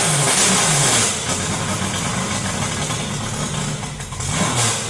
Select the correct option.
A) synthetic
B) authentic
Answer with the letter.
B